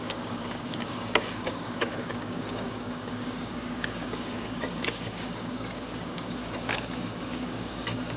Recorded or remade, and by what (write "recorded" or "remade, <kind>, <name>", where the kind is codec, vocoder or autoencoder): remade, codec, DAC